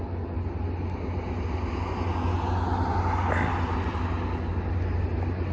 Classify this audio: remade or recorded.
recorded